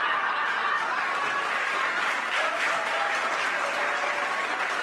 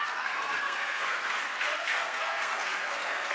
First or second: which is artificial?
second